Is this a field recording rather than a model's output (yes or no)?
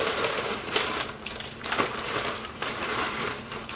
no